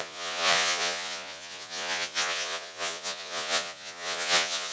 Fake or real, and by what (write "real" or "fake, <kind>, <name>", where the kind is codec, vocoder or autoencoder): fake, vocoder, Vocos